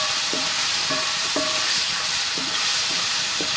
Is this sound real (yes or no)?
no